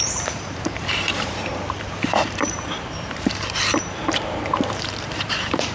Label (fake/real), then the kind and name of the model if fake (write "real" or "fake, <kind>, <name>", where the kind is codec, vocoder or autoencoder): fake, vocoder, BigVGAN v2